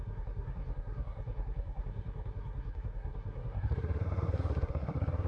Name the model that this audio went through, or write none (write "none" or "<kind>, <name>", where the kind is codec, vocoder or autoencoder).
codec, SNAC